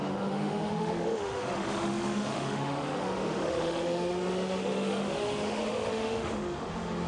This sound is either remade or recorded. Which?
remade